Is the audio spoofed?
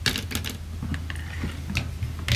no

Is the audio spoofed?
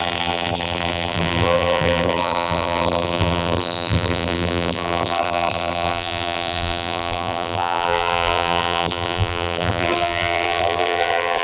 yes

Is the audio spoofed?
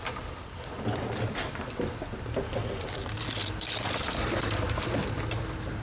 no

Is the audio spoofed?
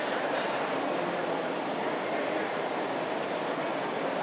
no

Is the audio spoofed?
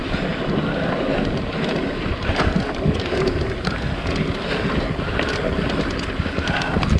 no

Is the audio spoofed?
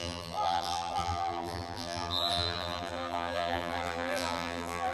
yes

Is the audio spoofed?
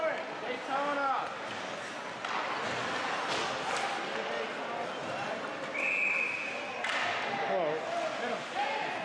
no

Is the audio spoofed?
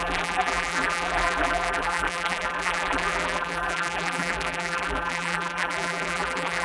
yes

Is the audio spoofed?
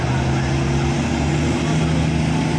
no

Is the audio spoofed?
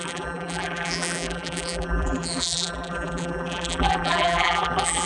yes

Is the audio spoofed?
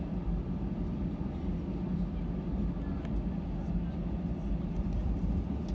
no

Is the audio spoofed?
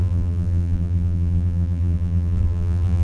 yes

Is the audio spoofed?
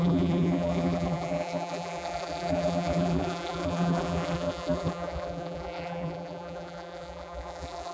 yes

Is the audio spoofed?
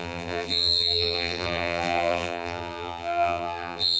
yes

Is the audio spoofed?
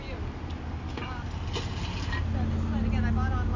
no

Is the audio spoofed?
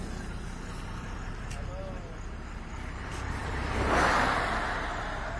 no